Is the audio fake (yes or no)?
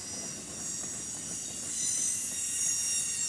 no